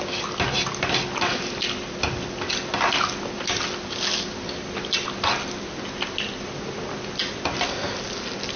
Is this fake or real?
real